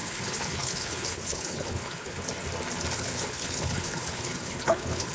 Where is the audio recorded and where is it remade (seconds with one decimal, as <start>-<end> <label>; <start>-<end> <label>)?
0.0-2.2 remade; 2.2-2.9 recorded; 2.9-5.1 remade